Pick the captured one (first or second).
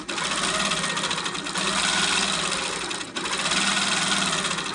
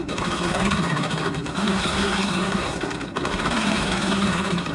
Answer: first